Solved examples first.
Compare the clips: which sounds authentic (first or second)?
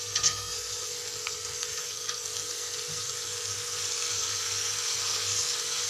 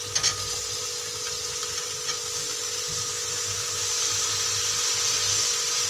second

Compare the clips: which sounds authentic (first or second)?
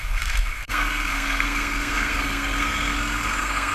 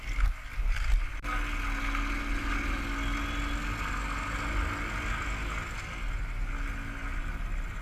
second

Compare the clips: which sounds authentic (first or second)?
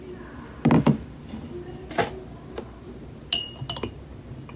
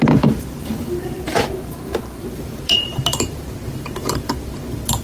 first